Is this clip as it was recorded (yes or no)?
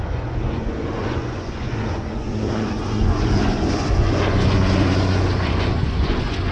no